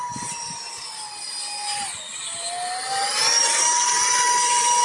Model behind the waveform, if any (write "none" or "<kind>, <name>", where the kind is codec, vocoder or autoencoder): none